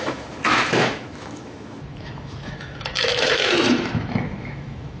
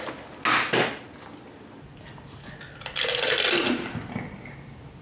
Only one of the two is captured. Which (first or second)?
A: second